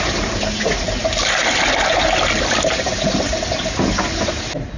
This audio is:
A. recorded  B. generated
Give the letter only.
A